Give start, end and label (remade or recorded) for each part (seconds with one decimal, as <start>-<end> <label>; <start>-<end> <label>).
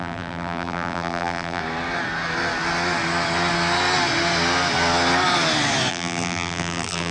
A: 0.0-1.6 remade; 1.6-5.9 recorded; 5.9-7.1 remade